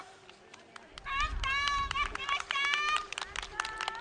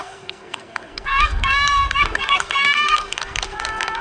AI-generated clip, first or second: second